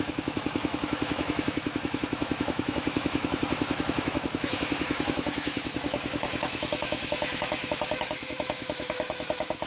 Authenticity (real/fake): fake